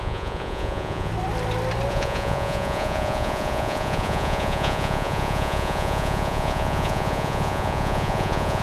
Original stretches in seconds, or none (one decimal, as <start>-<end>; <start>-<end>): 1.1-1.9